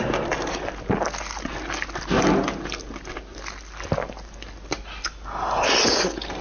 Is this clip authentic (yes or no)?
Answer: yes